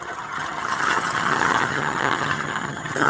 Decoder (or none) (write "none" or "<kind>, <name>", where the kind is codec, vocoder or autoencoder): vocoder, HiFi-GAN